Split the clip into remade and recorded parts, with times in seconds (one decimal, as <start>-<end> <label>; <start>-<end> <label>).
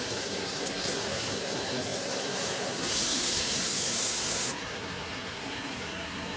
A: 0.0-6.4 remade